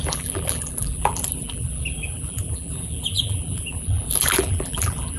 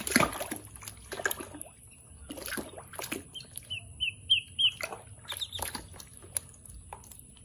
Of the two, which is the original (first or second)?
second